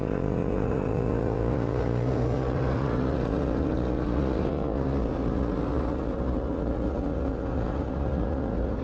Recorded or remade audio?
remade